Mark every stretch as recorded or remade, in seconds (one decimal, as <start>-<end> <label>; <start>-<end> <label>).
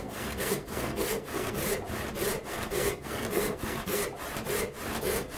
0.0-1.6 remade; 1.6-2.5 recorded; 2.5-4.0 remade; 4.0-5.0 recorded; 5.0-5.4 remade